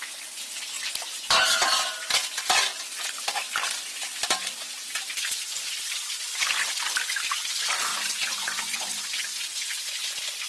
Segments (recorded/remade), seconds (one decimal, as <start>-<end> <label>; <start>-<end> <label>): 0.0-7.9 recorded; 7.9-9.8 remade; 9.8-10.5 recorded